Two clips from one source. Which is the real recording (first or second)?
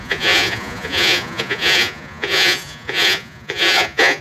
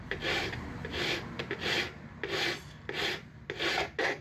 second